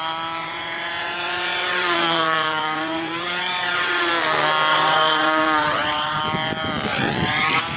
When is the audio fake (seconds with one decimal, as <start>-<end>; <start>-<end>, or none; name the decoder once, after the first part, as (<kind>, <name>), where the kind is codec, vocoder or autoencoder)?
0.4-4.1 (vocoder, WaveNeXt); 4.7-6.2; 6.9-7.8

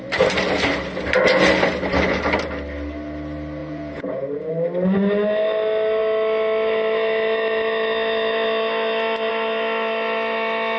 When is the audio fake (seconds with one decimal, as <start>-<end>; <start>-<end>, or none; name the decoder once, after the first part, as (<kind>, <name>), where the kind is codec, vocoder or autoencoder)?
3.6-4.5 (vocoder, Vocos)

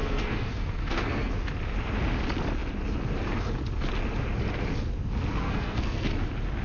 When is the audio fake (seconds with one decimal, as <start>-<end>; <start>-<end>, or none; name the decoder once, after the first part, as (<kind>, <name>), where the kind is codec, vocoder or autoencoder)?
0.0-1.3 (codec, SNAC); 5.4-6.1

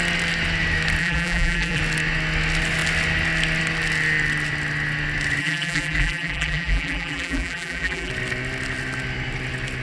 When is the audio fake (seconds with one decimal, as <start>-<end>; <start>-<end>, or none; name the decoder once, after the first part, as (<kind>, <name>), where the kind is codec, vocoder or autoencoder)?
1.0-1.8 (vocoder, BigVGAN v2); 5.4-8.1